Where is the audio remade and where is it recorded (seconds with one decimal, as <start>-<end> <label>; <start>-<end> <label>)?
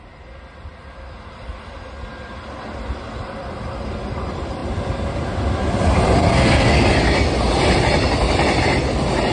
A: 0.0-6.2 recorded; 6.2-6.9 remade; 6.9-9.3 recorded